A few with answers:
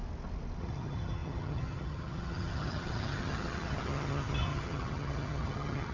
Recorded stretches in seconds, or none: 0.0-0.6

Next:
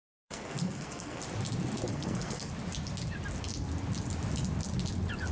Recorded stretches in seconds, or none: 1.2-1.9; 2.5-5.3

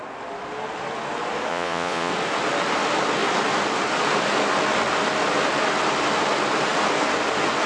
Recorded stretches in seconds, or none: 0.0-1.5; 2.1-7.7

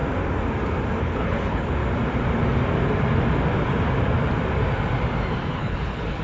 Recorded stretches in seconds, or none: 0.0-1.0; 1.8-5.5

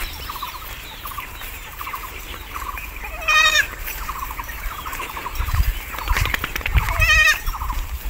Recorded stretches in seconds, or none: 5.2-6.0; 6.5-7.2